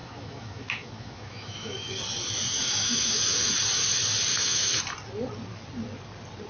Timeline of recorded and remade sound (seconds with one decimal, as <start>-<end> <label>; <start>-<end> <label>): 0.0-1.9 remade; 1.9-2.5 recorded; 2.5-3.5 remade; 3.5-4.3 recorded; 4.3-4.8 remade; 4.8-6.5 recorded